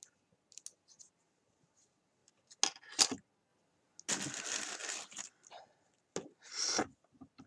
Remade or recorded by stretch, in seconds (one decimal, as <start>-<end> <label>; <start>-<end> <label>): 0.0-7.5 recorded